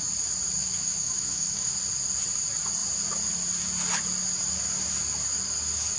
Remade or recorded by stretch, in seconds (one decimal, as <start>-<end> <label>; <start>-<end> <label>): 0.0-0.6 recorded; 0.6-1.8 remade; 1.8-6.0 recorded